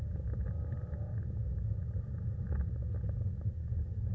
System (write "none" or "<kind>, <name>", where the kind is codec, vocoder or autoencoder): none